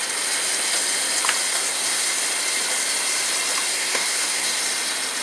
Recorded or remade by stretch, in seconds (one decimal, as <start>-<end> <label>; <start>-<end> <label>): 0.0-1.5 recorded; 1.5-2.1 remade; 2.1-3.7 recorded; 3.7-4.6 remade; 4.6-5.2 recorded